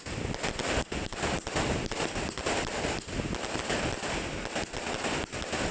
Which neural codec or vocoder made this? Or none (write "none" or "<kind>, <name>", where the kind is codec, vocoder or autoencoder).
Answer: none